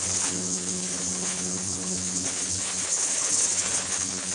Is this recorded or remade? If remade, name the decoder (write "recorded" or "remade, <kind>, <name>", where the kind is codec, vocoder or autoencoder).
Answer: remade, codec, HILCodec